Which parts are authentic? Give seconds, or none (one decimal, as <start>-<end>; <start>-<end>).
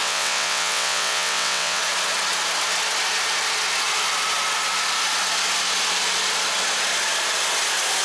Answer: 1.8-8.0